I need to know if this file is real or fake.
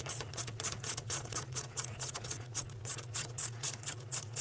fake